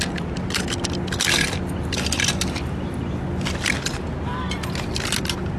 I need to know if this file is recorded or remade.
recorded